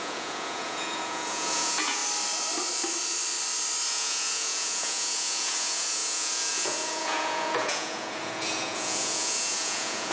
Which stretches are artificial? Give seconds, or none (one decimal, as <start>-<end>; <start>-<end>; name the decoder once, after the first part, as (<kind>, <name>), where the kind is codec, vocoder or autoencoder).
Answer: 0.0-2.0 (vocoder, Vocos); 3.9-10.1